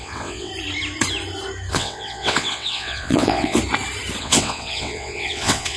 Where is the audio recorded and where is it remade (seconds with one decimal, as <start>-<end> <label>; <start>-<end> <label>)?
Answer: 0.0-0.5 remade; 0.5-1.7 recorded; 1.7-3.6 remade; 3.6-4.2 recorded; 4.2-5.8 remade